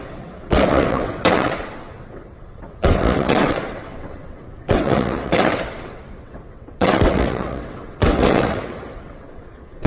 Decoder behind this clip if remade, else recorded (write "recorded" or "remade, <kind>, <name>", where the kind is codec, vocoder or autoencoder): remade, vocoder, WaveNeXt